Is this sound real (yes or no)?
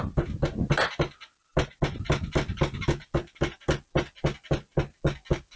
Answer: yes